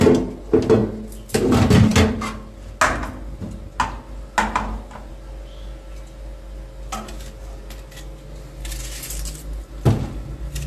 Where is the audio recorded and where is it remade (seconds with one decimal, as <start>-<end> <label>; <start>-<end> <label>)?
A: 0.0-10.7 recorded